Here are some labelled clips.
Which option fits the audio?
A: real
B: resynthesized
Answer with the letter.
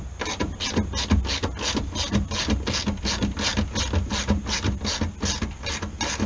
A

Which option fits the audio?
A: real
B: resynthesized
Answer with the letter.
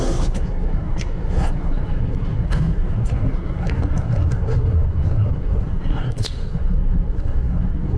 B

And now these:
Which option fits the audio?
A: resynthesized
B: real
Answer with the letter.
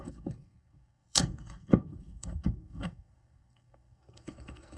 A